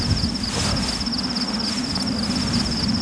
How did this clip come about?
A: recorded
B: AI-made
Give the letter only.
A